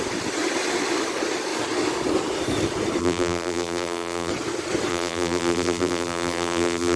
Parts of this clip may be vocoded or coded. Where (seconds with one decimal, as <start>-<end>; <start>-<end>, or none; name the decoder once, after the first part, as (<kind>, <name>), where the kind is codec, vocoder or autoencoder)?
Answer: 3.0-4.3 (vocoder, BigVGAN v2); 4.9-7.0